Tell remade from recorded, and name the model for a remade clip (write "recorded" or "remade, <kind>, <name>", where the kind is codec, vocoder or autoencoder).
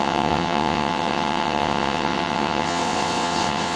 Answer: remade, vocoder, WaveNeXt